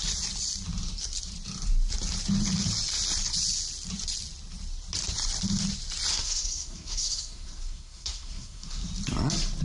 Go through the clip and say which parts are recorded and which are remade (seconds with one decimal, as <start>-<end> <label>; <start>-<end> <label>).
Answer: 0.0-6.1 recorded; 6.1-8.9 remade; 8.9-9.6 recorded